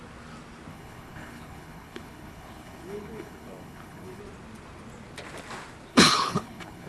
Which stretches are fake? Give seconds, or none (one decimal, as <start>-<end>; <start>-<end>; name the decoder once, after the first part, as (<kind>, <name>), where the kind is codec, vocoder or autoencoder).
0.7-4.2 (codec, HILCodec); 5.9-6.9